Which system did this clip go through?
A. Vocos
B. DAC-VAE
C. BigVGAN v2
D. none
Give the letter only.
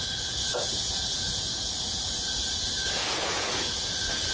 A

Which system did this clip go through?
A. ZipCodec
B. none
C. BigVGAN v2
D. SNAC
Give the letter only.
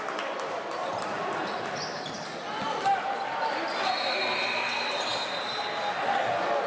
B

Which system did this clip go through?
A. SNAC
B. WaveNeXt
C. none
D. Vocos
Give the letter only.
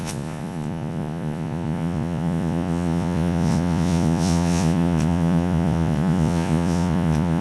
D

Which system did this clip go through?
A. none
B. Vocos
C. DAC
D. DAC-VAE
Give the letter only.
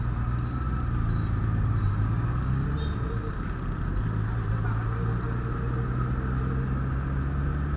A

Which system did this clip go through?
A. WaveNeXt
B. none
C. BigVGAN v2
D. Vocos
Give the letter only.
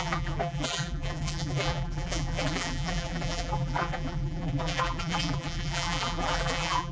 C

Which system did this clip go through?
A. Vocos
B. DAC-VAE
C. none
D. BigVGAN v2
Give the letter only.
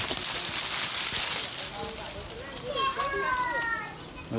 C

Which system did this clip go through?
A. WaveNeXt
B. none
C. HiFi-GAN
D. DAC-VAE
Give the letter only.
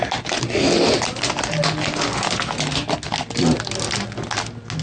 B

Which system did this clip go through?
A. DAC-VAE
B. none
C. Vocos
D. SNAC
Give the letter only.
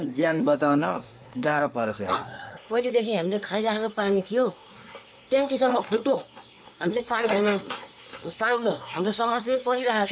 D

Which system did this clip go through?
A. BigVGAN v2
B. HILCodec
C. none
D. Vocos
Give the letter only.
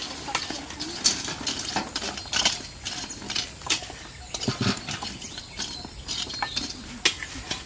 C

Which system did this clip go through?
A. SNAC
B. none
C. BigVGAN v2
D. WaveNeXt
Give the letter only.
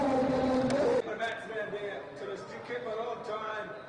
B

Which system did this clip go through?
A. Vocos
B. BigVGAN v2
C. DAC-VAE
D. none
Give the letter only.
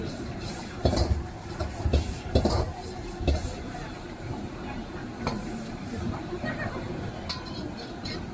B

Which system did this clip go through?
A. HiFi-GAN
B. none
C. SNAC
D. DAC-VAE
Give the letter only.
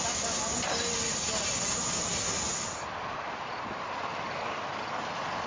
B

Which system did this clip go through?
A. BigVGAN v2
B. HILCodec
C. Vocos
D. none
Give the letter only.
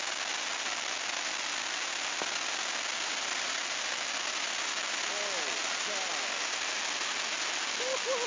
D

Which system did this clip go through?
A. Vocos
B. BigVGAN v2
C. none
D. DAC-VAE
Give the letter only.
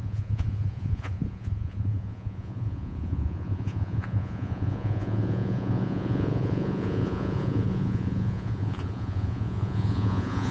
A